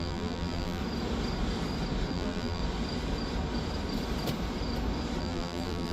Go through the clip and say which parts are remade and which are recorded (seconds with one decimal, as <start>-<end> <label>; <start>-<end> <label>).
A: 0.0-0.8 remade; 0.8-2.1 recorded; 2.1-2.6 remade; 2.6-5.2 recorded; 5.2-5.9 remade